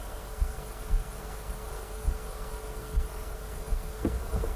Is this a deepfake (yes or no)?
yes